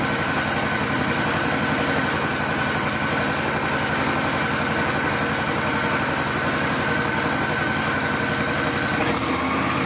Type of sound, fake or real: real